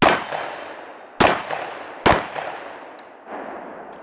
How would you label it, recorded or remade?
recorded